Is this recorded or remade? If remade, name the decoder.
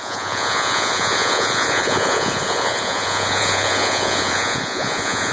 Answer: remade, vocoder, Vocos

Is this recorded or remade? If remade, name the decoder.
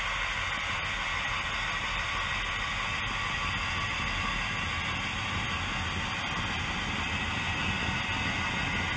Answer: recorded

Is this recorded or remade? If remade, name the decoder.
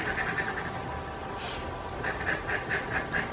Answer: recorded